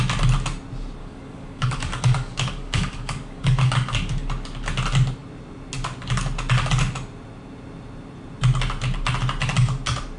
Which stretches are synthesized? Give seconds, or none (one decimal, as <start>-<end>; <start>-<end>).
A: 1.0-4.1